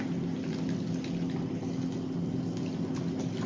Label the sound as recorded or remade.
recorded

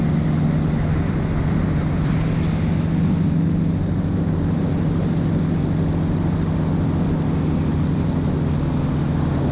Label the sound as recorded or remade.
recorded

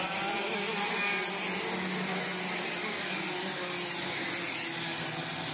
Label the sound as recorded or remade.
recorded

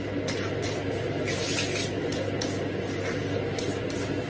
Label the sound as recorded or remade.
recorded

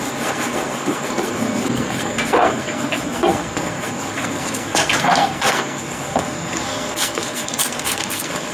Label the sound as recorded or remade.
remade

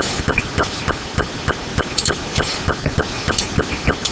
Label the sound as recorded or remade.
recorded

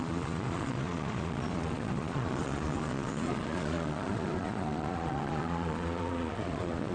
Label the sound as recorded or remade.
remade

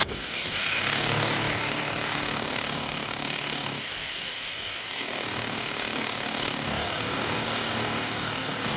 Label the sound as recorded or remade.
remade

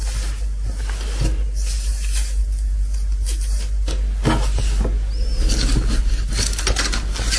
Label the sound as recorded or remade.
recorded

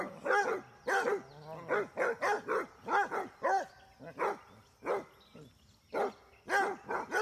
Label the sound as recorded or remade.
recorded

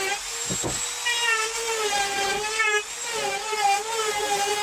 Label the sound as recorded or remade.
recorded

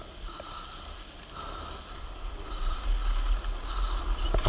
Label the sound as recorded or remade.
recorded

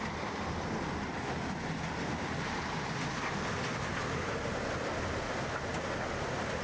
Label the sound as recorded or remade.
recorded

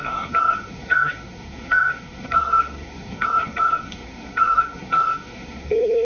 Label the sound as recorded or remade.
remade